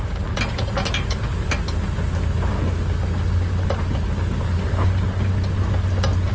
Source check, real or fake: real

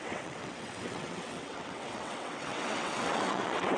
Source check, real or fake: fake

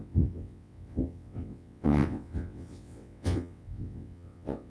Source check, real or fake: fake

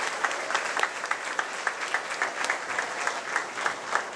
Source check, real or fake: real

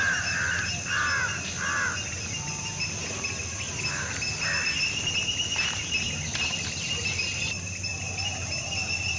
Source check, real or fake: real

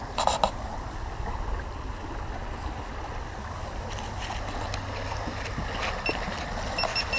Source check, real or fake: real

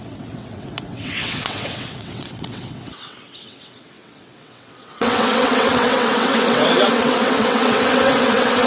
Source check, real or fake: fake